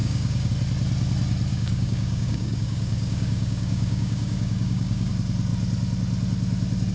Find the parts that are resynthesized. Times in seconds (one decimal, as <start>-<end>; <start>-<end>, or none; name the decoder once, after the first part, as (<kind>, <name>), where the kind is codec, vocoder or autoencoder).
0.0-0.5 (codec, DAC); 1.5-5.1